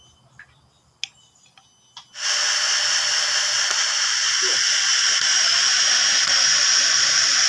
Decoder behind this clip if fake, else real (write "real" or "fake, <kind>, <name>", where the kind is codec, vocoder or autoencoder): real